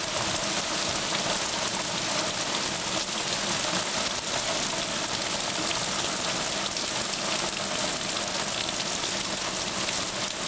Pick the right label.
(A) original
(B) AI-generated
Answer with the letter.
A